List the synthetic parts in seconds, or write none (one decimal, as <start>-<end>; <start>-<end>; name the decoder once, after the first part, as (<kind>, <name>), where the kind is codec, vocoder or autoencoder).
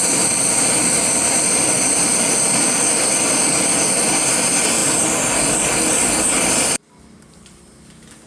none